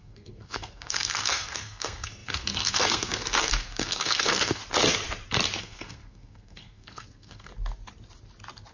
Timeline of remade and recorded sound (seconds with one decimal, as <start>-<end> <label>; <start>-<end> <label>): 0.0-4.6 remade; 4.6-5.6 recorded; 5.6-7.5 remade; 7.5-8.7 recorded